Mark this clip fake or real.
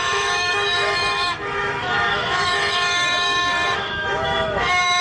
fake